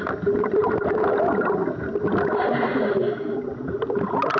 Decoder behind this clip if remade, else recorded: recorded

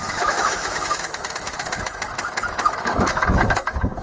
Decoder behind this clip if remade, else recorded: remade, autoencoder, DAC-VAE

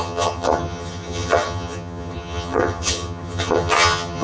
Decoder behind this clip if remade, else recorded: remade, vocoder, HiFi-GAN